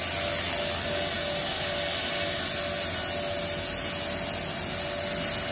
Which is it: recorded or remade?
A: recorded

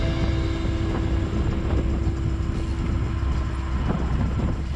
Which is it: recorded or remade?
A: recorded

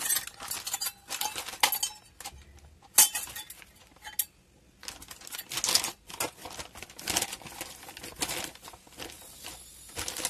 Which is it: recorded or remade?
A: recorded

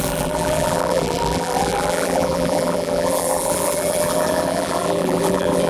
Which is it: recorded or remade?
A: remade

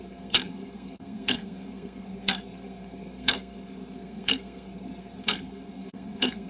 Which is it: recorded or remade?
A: remade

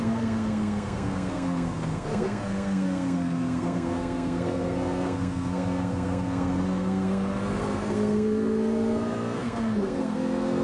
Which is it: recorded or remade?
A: remade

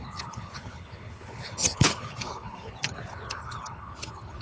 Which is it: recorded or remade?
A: remade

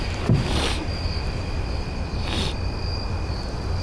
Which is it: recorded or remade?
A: recorded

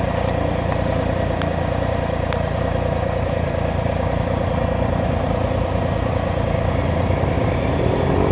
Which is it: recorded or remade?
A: recorded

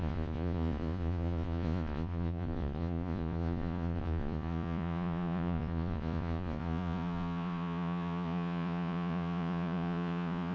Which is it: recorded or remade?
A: remade